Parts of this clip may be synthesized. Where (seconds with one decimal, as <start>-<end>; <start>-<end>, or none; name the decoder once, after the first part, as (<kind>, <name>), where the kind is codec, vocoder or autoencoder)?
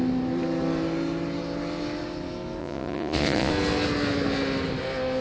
2.6-3.5 (vocoder, Vocos)